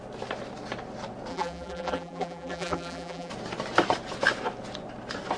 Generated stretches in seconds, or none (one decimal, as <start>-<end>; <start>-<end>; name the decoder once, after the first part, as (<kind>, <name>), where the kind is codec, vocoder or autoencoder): 1.3-3.3 (vocoder, BigVGAN v2)